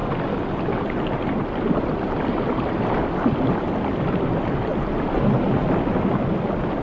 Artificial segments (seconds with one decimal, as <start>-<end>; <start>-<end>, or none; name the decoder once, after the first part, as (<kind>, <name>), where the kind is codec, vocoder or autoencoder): none